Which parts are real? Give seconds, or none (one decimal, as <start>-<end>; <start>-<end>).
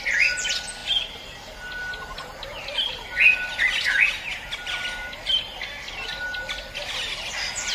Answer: 0.0-7.7